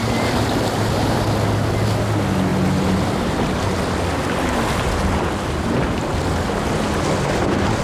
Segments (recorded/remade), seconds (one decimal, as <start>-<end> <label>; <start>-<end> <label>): 0.0-7.8 recorded

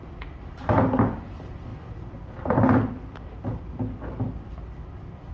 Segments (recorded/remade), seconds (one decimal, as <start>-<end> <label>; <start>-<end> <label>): 0.0-5.3 remade

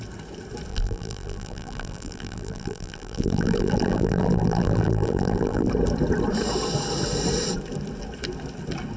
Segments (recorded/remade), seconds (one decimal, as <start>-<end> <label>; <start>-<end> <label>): 0.0-0.7 recorded; 0.7-5.7 remade; 5.7-9.0 recorded